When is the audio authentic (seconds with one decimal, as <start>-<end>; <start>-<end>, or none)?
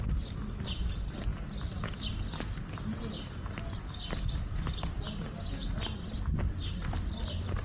0.0-7.6